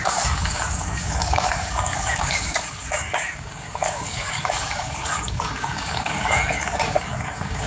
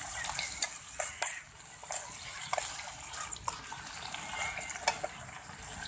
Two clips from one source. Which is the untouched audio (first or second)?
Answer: second